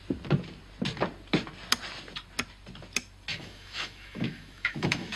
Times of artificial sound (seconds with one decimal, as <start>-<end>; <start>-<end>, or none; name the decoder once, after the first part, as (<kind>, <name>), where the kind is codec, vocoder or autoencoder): 3.3-5.2 (autoencoder, DAC-VAE)